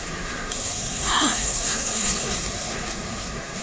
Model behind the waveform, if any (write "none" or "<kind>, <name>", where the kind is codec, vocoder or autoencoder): codec, SNAC